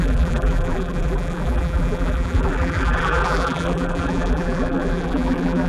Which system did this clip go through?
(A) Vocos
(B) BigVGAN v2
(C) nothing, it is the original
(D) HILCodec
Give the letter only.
B